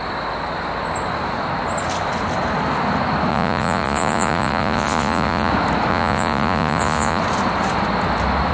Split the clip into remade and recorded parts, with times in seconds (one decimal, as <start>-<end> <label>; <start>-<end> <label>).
0.0-3.3 recorded; 3.3-5.5 remade; 5.5-5.9 recorded; 5.9-7.2 remade; 7.2-8.5 recorded